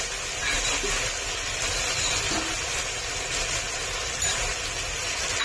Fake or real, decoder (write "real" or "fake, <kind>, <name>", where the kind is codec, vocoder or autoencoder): real